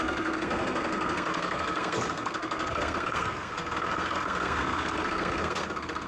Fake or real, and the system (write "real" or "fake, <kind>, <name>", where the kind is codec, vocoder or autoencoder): fake, codec, SNAC